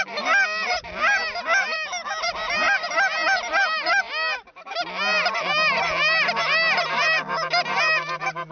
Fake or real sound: real